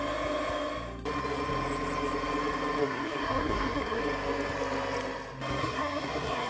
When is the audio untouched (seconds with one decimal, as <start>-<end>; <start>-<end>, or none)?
0.0-2.8; 4.0-5.6